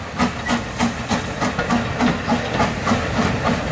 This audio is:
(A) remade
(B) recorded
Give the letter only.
B